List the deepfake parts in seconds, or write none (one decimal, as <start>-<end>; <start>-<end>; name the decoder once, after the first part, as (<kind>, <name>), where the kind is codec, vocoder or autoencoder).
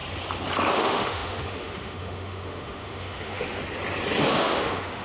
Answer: 0.7-3.6 (autoencoder, DAC-VAE); 4.2-5.0